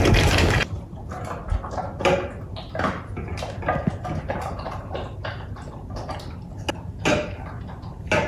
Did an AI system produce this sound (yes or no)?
no